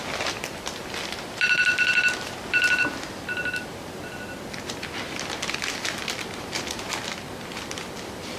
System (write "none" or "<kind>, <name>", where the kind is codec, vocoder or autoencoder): vocoder, BigVGAN v2